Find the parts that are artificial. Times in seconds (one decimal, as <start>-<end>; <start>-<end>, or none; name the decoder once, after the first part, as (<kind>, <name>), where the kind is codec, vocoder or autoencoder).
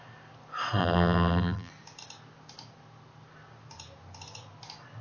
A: 0.8-1.7 (vocoder, BigVGAN v2)